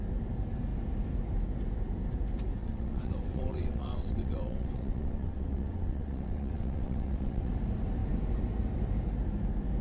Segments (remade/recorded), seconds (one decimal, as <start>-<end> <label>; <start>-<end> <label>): 0.0-2.6 recorded; 2.6-7.5 remade; 7.5-9.8 recorded